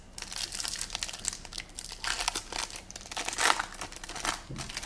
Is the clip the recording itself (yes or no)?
yes